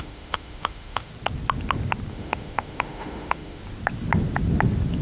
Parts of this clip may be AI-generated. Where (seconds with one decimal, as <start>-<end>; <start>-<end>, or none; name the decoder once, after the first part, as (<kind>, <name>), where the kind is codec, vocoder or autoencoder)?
0.0-1.1 (autoencoder, DAC-VAE); 2.1-3.6